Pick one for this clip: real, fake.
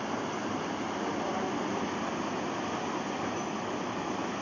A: real